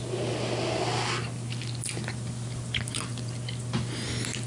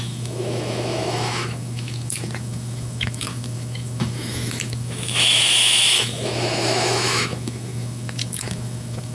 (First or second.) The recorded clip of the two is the first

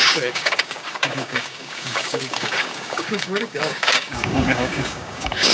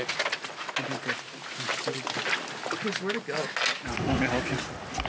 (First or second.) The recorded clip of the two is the second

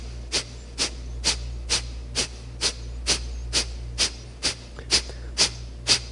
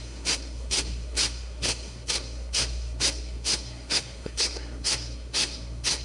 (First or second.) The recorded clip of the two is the first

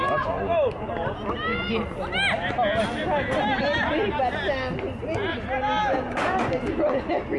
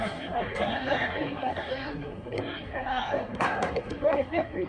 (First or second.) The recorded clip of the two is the first